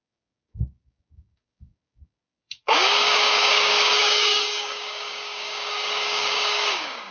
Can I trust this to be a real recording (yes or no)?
no